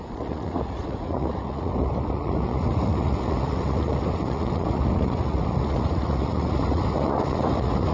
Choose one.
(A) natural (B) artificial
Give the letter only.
B